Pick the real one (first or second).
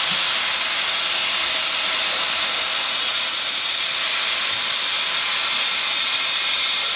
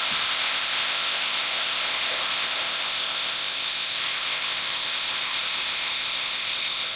first